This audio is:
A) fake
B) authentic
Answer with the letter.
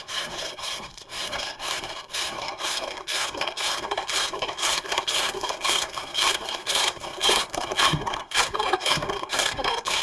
A